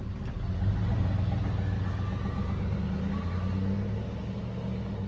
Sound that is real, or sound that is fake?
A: real